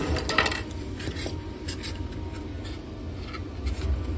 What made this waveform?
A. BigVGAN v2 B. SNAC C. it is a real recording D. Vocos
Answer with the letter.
C